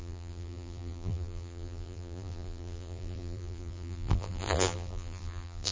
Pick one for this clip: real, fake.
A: fake